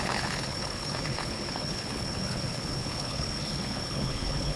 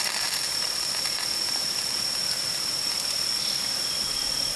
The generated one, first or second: first